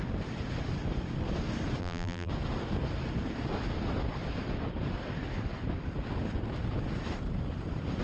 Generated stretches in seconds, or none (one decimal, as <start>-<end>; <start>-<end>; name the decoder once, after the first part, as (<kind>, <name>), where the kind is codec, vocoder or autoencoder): 1.8-2.3 (vocoder, BigVGAN v2)